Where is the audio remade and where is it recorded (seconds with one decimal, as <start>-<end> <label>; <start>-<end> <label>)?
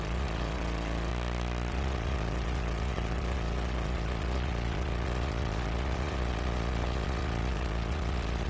0.0-1.1 remade; 1.1-1.7 recorded; 1.7-8.5 remade